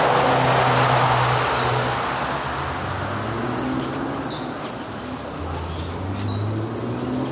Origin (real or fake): real